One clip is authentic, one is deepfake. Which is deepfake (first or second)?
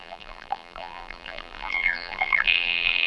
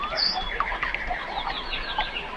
first